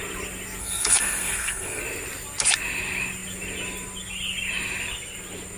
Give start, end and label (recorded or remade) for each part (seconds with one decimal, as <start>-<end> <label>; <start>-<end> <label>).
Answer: 0.0-0.6 recorded; 0.6-1.8 remade; 1.8-5.6 recorded